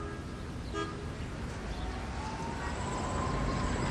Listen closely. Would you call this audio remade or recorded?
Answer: recorded